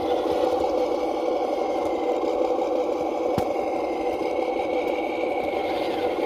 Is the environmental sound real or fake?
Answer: real